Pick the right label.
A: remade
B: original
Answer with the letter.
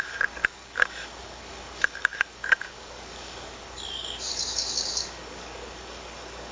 A